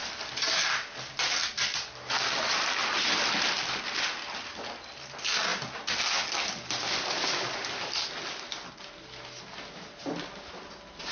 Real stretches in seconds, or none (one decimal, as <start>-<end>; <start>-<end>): 0.0-11.1